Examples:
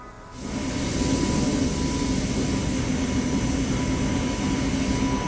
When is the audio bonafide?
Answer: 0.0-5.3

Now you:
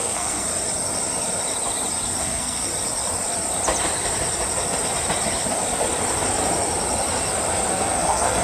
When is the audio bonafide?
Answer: 0.5-2.2; 2.7-7.7

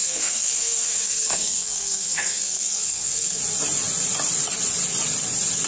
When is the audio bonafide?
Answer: 3.4-5.7

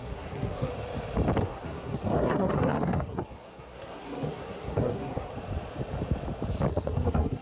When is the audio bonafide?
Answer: 0.7-1.4; 5.3-6.7

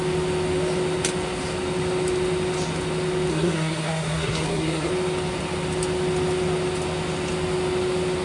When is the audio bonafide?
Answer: 0.0-3.3; 4.9-8.2

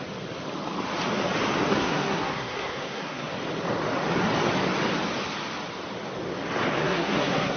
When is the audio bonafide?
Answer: 0.0-1.7; 3.3-6.8

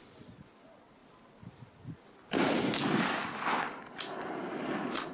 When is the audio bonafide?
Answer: 0.0-5.1